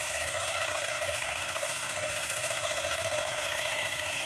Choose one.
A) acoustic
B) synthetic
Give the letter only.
B